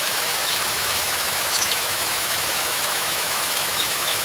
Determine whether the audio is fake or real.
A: fake